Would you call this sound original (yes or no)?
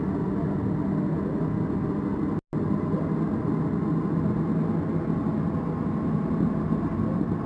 yes